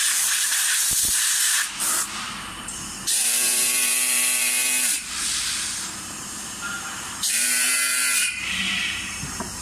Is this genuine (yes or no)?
no